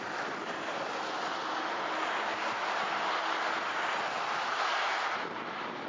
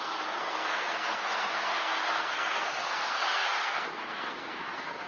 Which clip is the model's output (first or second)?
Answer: second